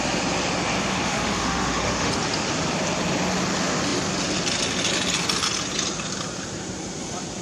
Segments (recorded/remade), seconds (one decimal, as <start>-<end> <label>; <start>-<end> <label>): 0.0-0.9 recorded; 0.9-2.1 remade; 2.1-7.4 recorded